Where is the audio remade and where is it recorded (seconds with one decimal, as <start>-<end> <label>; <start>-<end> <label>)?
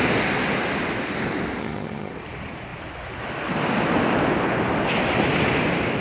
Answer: 0.0-1.6 recorded; 1.6-2.1 remade; 2.1-6.0 recorded